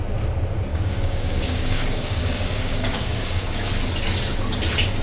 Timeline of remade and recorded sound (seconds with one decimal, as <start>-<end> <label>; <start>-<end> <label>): 0.0-0.7 recorded; 0.7-3.7 remade; 3.7-5.0 recorded